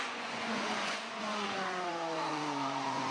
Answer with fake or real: fake